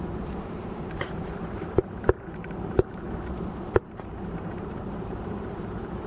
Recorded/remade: remade